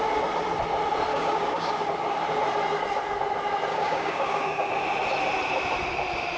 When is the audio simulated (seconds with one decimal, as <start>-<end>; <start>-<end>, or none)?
1.1-1.7; 3.7-4.7